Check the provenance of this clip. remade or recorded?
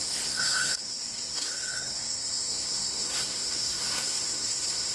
remade